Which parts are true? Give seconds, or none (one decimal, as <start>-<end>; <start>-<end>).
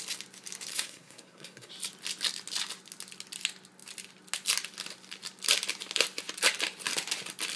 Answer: 0.0-0.7; 1.7-7.6